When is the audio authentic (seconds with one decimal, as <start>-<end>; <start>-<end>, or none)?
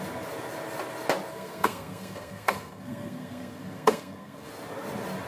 0.0-1.3; 4.5-5.3